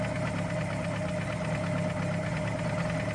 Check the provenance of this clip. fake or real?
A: real